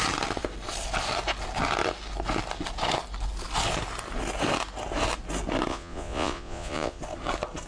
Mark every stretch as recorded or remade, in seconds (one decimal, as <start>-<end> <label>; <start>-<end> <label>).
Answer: 0.0-5.7 recorded; 5.7-7.0 remade; 7.0-7.7 recorded